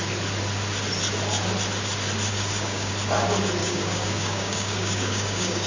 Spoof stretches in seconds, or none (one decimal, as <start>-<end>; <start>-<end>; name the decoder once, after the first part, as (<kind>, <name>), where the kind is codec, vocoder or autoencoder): 2.3-2.9 (codec, DAC); 3.6-5.7